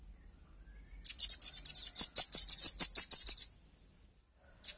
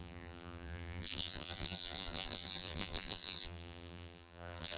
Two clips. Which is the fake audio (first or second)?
second